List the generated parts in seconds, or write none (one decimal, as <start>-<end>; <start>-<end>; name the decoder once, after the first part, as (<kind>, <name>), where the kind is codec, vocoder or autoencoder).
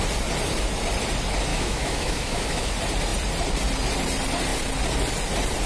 1.5-2.7 (autoencoder, DAC-VAE)